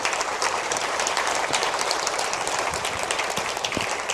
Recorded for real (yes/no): no